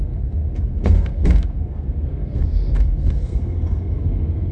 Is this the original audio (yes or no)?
no